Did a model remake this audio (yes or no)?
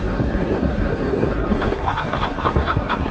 yes